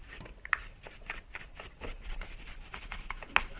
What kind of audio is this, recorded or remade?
recorded